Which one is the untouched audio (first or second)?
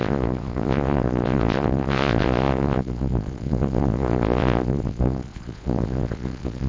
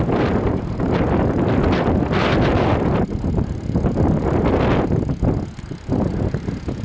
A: second